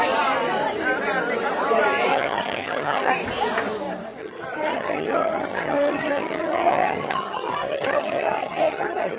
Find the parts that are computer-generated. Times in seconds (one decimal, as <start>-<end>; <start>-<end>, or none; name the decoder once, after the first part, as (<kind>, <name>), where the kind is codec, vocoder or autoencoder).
2.1-3.1 (vocoder, HiFi-GAN); 4.2-9.2